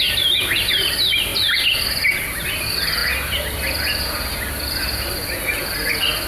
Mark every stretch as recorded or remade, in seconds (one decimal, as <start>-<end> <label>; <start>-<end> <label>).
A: 0.0-1.3 recorded; 1.3-1.8 remade; 1.8-6.3 recorded